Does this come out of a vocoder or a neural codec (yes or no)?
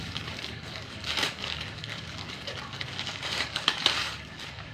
yes